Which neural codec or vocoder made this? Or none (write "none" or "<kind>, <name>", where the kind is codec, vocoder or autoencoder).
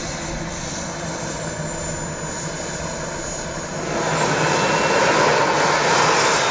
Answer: none